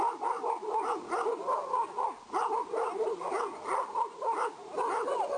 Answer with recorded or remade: recorded